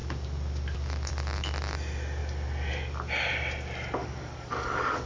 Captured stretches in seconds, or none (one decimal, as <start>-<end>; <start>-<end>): 0.0-4.0